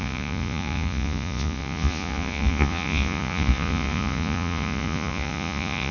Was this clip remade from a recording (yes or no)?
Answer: yes